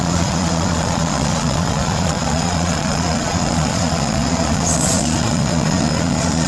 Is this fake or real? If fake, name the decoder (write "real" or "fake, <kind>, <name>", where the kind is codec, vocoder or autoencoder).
fake, vocoder, Vocos